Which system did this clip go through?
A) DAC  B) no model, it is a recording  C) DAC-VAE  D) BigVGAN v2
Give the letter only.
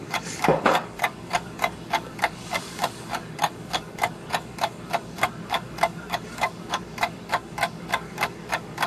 A